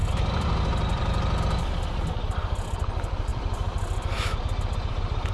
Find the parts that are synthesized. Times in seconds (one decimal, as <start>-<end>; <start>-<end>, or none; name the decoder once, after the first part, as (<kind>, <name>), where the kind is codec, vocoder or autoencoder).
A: 0.0-5.3 (vocoder, BigVGAN v2)